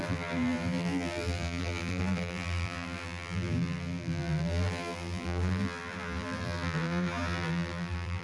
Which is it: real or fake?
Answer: fake